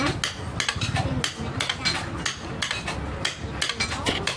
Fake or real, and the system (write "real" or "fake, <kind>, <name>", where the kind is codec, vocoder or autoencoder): real